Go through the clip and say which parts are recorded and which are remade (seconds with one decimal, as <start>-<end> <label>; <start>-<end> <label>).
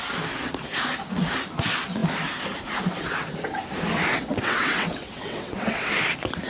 0.0-4.1 recorded; 4.1-5.9 remade; 5.9-6.5 recorded